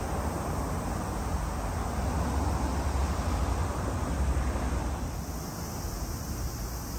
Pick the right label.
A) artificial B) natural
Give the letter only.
B